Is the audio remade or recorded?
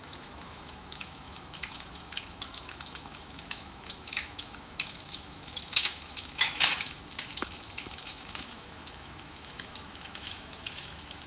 remade